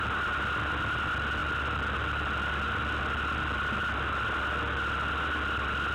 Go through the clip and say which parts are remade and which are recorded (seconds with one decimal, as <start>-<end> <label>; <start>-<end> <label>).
0.0-5.9 recorded